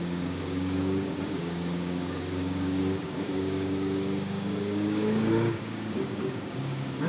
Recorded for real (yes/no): no